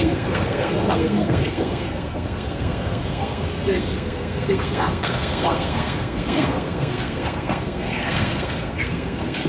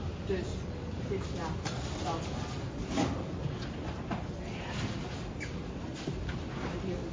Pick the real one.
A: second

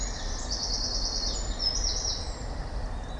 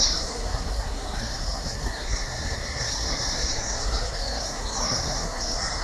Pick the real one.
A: first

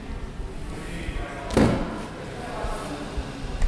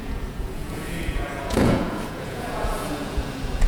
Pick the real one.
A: first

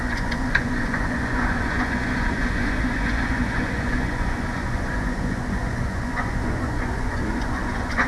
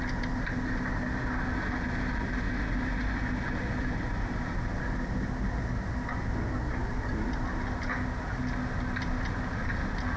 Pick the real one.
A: second